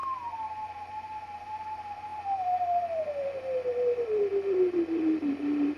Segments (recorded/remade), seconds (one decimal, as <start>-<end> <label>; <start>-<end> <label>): 0.0-5.8 remade